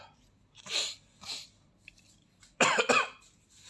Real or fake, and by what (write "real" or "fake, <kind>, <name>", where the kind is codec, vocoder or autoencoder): real